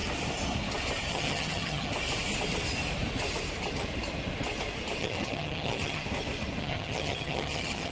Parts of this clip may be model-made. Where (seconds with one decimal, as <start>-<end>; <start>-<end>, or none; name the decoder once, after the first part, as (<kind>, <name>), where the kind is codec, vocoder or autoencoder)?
1.1-1.9 (vocoder, HiFi-GAN); 5.0-6.0; 6.6-7.9

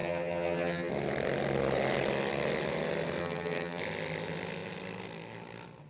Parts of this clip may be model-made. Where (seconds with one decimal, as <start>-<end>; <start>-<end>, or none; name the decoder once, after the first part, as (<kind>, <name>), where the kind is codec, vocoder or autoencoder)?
0.0-0.9 (vocoder, HiFi-GAN); 3.2-3.8

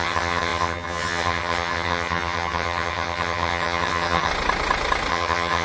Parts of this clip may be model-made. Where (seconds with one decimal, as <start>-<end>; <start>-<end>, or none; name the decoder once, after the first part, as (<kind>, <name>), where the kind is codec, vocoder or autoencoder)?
0.0-4.3 (vocoder, HiFi-GAN); 5.1-5.6

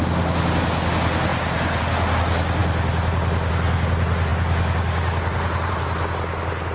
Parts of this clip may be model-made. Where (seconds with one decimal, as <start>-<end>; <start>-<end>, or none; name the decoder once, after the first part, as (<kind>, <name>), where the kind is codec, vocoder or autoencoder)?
none

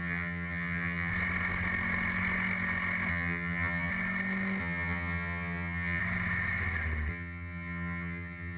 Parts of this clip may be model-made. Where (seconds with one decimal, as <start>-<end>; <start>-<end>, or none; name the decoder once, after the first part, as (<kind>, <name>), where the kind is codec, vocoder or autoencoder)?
0.0-1.1 (vocoder, HiFi-GAN); 3.1-3.9; 4.6-6.0; 7.1-8.6

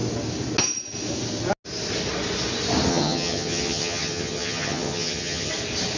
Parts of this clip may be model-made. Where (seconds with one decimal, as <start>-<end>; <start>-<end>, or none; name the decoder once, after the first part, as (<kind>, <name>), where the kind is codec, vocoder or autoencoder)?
2.9-5.5 (vocoder, HiFi-GAN)

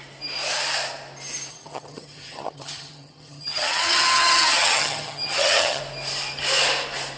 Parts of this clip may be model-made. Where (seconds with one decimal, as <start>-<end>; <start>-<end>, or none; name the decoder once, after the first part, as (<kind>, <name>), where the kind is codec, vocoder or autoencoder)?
1.5-5.8 (vocoder, HiFi-GAN)